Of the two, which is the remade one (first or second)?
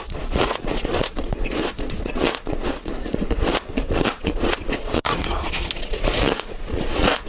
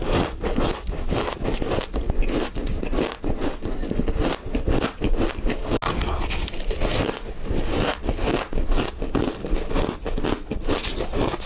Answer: first